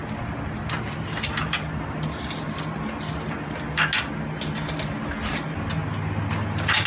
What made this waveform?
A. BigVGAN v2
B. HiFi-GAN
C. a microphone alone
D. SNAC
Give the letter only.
C